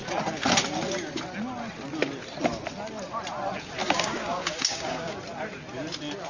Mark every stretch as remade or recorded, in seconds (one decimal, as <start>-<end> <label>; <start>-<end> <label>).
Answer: 0.0-3.8 recorded; 3.8-5.1 remade; 5.1-6.3 recorded